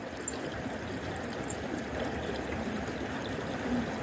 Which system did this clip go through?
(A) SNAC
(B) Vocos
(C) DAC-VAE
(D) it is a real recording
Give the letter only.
D